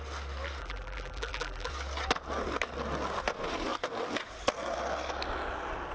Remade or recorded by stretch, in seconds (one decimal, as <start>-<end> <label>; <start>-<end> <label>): 0.0-0.6 recorded; 0.6-1.7 remade; 1.7-5.9 recorded